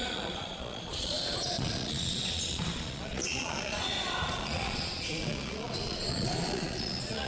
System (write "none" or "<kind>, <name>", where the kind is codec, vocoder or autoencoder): vocoder, Vocos